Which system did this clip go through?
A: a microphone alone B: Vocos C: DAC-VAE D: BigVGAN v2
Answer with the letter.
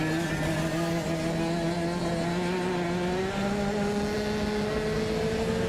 A